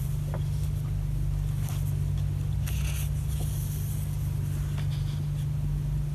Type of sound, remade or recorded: recorded